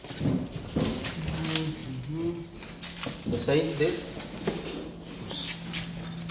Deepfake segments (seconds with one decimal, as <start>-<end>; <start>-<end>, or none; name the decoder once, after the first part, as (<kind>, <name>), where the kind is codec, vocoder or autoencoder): none